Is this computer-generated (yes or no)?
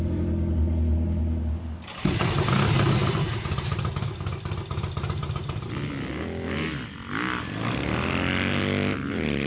no